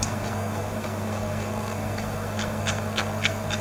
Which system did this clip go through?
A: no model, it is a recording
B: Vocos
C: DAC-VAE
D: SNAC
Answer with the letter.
D